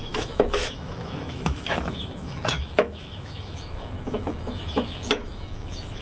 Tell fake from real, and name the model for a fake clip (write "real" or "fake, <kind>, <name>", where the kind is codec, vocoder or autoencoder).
fake, autoencoder, DAC-VAE